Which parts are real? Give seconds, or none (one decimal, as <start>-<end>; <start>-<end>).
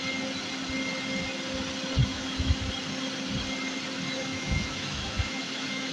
0.0-2.0; 2.7-4.3